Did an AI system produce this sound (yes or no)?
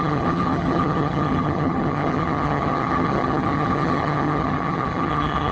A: yes